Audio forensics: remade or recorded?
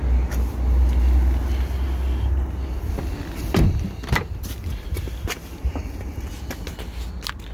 recorded